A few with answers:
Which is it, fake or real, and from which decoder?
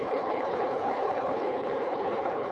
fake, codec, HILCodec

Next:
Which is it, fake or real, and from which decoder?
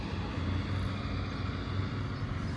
real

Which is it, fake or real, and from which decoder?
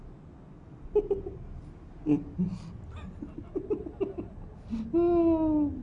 real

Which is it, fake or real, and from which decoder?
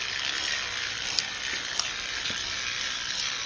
real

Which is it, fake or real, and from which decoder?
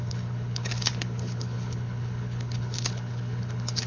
fake, codec, HILCodec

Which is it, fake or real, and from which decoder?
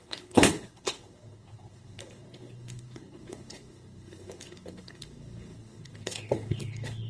fake, codec, HILCodec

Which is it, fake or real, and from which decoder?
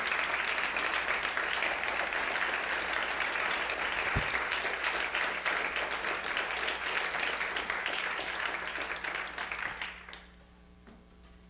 real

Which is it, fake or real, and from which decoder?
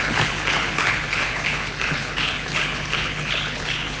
fake, codec, HILCodec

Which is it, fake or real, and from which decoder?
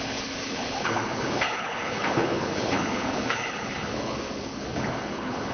fake, codec, HILCodec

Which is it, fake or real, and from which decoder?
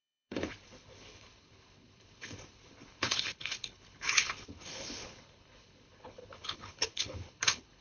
fake, codec, HILCodec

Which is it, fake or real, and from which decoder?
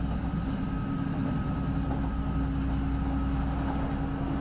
real